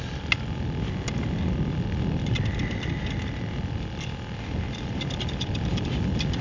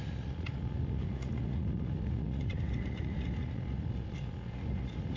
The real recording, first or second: first